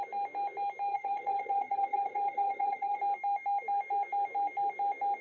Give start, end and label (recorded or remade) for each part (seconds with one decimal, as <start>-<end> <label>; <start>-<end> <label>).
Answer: 0.0-0.9 recorded; 0.9-3.0 remade; 3.0-5.2 recorded